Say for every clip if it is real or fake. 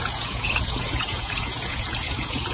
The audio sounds fake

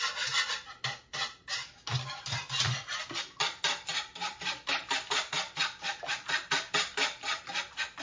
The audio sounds real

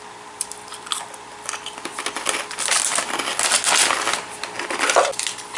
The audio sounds real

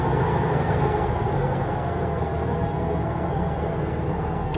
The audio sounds fake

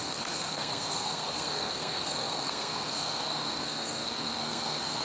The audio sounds fake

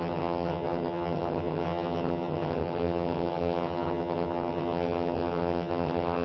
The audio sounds fake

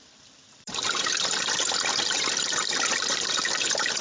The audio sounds fake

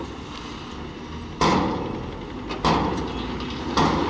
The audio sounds real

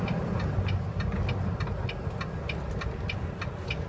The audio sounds real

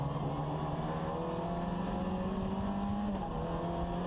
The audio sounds real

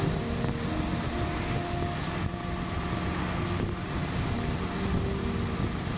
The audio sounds real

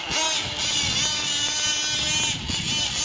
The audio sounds real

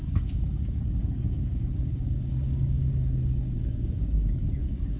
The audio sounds fake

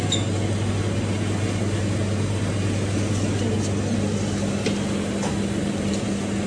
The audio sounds real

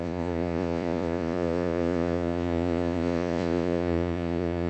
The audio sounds fake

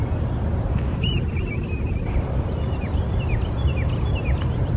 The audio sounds real